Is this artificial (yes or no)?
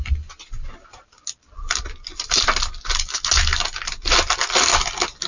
no